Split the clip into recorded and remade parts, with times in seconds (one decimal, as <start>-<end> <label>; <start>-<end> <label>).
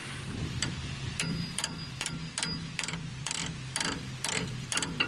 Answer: 0.0-2.1 remade; 2.1-3.1 recorded; 3.1-5.1 remade